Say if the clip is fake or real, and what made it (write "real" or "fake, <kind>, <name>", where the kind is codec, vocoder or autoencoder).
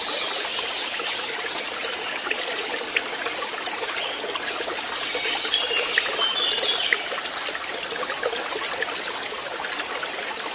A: real